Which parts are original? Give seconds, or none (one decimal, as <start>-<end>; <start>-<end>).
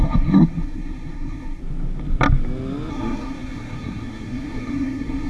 1.6-2.9